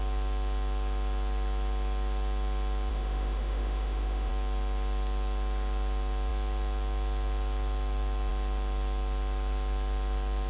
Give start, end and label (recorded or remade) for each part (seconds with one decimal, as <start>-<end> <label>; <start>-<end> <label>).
0.0-2.9 recorded; 2.9-4.3 remade; 4.3-10.5 recorded